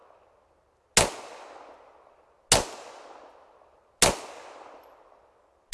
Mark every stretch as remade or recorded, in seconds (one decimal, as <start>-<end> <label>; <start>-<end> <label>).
0.0-5.7 recorded